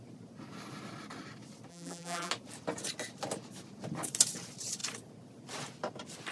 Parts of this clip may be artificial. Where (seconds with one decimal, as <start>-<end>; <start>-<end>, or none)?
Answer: 1.7-2.3